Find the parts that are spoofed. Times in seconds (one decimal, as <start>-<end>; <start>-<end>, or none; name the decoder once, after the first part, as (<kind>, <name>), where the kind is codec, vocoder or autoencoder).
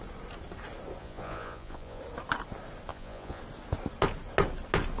1.0-2.0 (vocoder, Vocos); 2.9-3.4